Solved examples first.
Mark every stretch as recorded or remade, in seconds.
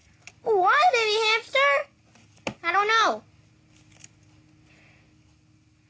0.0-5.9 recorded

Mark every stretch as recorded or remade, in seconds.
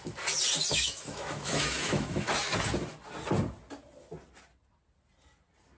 0.0-0.7 recorded; 0.7-2.3 remade; 2.3-5.8 recorded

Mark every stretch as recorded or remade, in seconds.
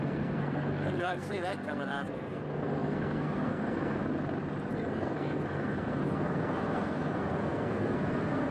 0.0-4.0 remade; 4.0-4.7 recorded; 4.7-8.5 remade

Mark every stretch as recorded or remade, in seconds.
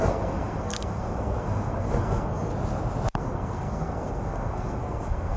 0.0-2.5 remade; 2.5-3.1 recorded; 3.1-5.4 remade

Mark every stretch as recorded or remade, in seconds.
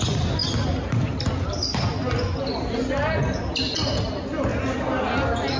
0.0-5.6 recorded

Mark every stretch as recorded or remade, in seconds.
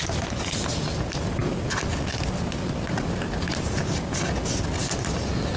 0.0-5.6 recorded